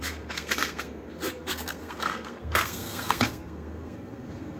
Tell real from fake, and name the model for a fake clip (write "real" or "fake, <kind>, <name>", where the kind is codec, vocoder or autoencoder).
fake, codec, SNAC